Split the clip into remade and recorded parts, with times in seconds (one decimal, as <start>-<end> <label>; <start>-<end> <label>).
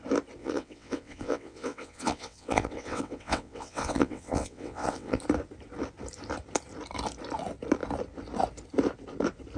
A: 0.0-0.4 recorded; 0.4-5.2 remade; 5.2-9.6 recorded